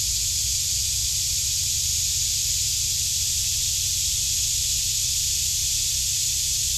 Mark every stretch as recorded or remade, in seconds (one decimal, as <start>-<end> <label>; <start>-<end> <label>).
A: 0.0-5.6 recorded; 5.6-6.8 remade